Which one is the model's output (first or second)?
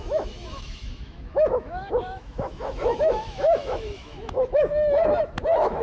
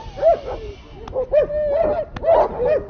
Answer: first